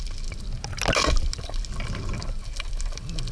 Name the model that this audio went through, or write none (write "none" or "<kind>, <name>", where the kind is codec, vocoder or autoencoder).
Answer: none